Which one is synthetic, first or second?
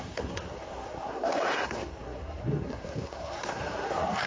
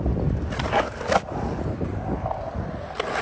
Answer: first